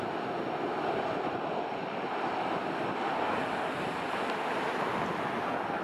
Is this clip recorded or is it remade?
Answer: recorded